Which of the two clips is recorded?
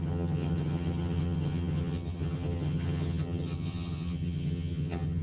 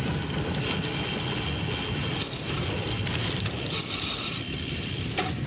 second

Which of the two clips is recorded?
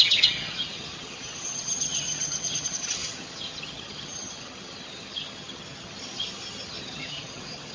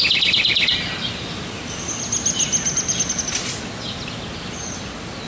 second